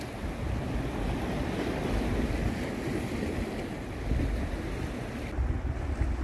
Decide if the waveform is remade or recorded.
recorded